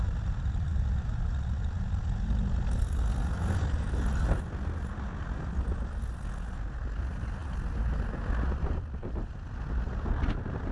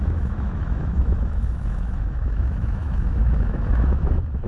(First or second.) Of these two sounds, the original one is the first